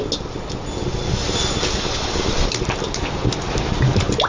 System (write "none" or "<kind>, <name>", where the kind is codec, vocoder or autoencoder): none